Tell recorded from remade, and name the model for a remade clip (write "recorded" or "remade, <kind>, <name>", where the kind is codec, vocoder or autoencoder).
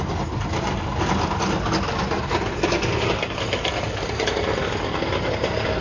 recorded